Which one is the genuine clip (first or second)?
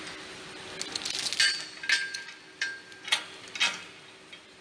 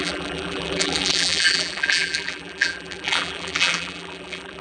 first